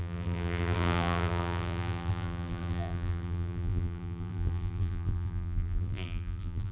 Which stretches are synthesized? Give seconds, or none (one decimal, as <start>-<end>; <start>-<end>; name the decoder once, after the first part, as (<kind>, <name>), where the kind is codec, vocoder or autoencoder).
0.0-6.7 (vocoder, BigVGAN v2)